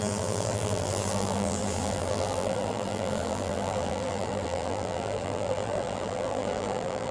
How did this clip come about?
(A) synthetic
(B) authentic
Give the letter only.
A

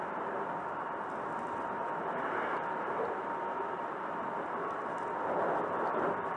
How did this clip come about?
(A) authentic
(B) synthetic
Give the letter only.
A